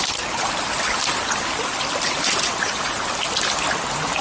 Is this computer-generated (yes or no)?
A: no